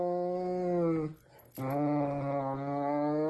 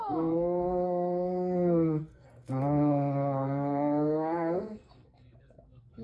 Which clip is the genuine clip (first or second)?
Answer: first